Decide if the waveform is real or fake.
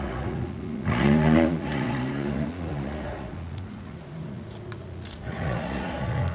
fake